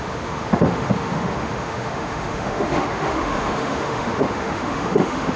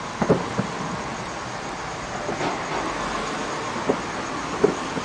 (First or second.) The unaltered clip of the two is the second